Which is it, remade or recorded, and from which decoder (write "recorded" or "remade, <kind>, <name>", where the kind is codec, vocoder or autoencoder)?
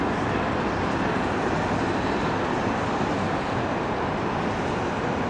recorded